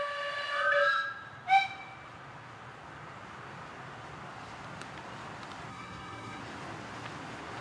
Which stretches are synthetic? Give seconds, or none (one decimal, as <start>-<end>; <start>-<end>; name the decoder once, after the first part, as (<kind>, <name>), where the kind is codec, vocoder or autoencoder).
5.7-6.4 (codec, SNAC)